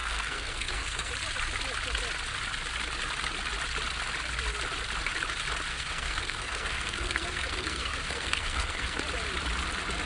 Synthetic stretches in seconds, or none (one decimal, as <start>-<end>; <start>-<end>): 0.0-1.1; 5.7-9.0